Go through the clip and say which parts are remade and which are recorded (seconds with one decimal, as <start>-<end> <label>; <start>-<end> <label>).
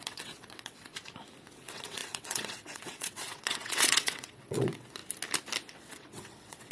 0.0-0.9 remade; 0.9-1.5 recorded; 1.5-5.0 remade; 5.0-5.7 recorded; 5.7-6.7 remade